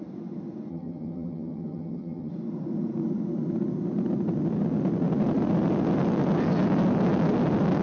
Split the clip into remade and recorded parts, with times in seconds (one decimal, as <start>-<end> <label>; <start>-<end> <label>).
0.0-0.7 recorded; 0.7-2.3 remade; 2.3-7.8 recorded